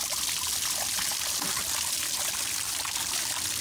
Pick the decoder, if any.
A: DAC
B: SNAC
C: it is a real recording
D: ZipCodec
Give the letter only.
C